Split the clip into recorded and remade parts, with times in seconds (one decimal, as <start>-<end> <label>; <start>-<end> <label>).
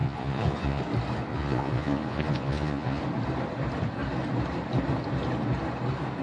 0.0-0.8 remade; 0.8-1.3 recorded; 1.3-3.0 remade; 3.0-6.2 recorded